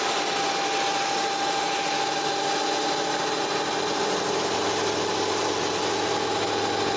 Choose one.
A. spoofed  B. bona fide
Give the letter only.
B